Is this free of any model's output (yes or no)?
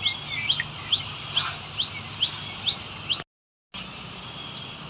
yes